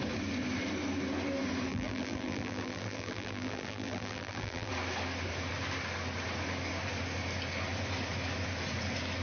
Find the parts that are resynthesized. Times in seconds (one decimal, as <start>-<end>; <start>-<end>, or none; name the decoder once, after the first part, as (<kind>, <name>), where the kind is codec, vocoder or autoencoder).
1.7-4.7 (vocoder, BigVGAN v2)